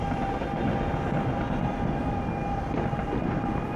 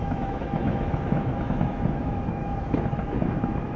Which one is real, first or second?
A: first